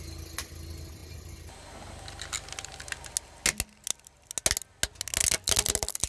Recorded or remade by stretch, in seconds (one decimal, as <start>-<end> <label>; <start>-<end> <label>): 0.0-6.1 recorded

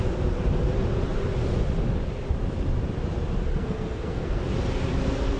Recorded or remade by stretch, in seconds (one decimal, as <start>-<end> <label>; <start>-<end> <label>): 0.0-3.5 recorded; 3.5-4.4 remade; 4.4-5.4 recorded

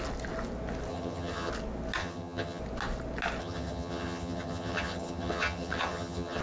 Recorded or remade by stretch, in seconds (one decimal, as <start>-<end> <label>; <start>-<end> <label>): 0.0-0.9 recorded; 0.9-1.5 remade; 1.5-2.0 recorded; 2.0-2.6 remade; 2.6-3.4 recorded; 3.4-6.4 remade

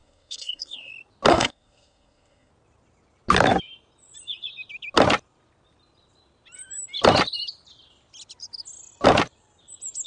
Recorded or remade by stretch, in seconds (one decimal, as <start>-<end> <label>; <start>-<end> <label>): 0.0-0.9 remade; 0.9-1.3 recorded; 1.3-2.5 remade; 2.5-10.1 recorded

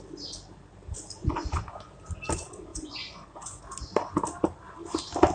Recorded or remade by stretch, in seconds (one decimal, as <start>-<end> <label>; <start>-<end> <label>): 0.0-1.2 recorded; 1.2-1.8 remade; 1.8-2.7 recorded; 2.7-3.6 remade; 3.6-5.3 recorded

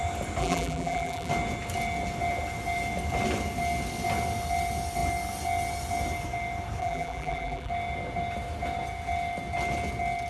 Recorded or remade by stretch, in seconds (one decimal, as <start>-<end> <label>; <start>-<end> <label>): 0.0-0.4 recorded; 0.4-1.3 remade; 1.3-6.8 recorded; 6.8-7.7 remade; 7.7-10.3 recorded

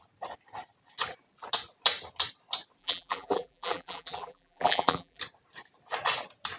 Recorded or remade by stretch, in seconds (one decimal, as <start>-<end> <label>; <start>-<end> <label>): 0.0-2.8 recorded; 2.8-5.2 remade; 5.2-6.6 recorded

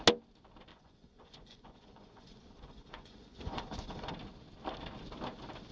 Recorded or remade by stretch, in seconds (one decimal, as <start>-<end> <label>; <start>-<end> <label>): 0.0-0.7 recorded; 0.7-4.1 remade; 4.1-5.7 recorded